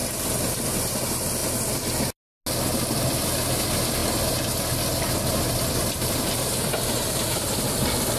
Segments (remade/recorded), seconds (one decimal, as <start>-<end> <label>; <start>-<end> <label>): 0.0-0.7 recorded; 0.7-1.4 remade; 1.4-3.0 recorded; 3.0-4.0 remade; 4.0-5.1 recorded; 5.1-8.2 remade